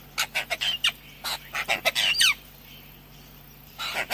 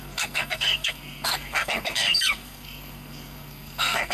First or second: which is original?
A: first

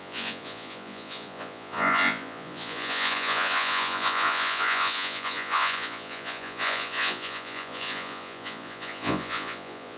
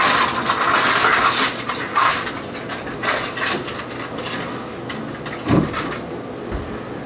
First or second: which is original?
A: second